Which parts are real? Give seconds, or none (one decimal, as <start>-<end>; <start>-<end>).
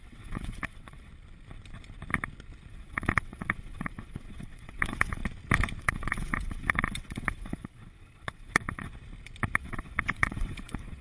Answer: 1.1-2.7; 5.2-5.8; 8.9-9.6